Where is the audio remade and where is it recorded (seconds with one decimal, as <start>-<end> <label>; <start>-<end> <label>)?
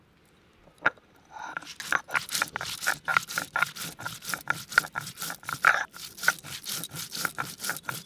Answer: 0.0-8.1 recorded